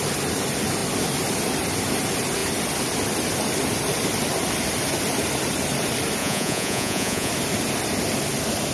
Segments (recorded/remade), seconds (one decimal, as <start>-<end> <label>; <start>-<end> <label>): 0.0-6.2 recorded; 6.2-7.3 remade; 7.3-8.7 recorded